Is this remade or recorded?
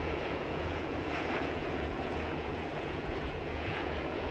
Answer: remade